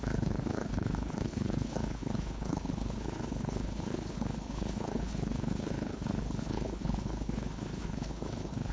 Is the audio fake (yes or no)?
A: yes